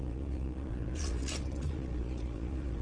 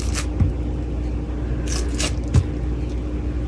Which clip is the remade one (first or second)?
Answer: first